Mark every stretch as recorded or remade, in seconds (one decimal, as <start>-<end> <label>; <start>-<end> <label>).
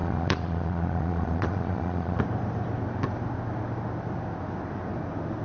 0.0-2.2 remade; 2.2-5.4 recorded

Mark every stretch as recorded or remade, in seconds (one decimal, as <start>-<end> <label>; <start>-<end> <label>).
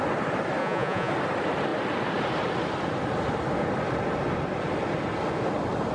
0.0-0.6 recorded; 0.6-1.1 remade; 1.1-5.9 recorded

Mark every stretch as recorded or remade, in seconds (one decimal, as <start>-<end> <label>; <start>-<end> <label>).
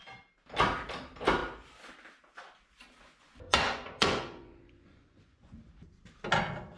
0.0-3.0 recorded; 3.0-5.6 remade; 5.6-6.8 recorded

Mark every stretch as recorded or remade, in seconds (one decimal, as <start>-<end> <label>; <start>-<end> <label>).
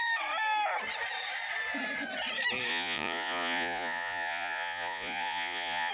0.0-2.7 recorded; 2.7-5.9 remade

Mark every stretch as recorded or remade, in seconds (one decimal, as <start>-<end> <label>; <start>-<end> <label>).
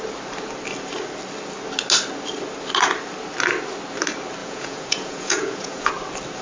0.0-4.4 recorded; 4.4-5.9 remade; 5.9-6.4 recorded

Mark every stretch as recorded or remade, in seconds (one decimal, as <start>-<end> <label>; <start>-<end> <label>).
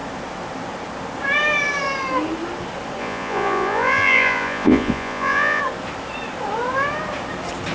0.0-3.0 recorded; 3.0-5.6 remade; 5.6-7.7 recorded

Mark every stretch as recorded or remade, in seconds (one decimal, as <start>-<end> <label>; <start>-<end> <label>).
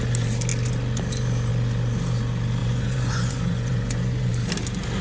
0.0-2.6 recorded; 2.6-4.3 remade; 4.3-5.0 recorded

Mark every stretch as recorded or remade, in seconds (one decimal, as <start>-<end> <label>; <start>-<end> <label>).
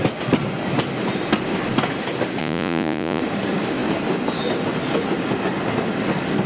0.0-2.4 recorded; 2.4-3.2 remade; 3.2-6.5 recorded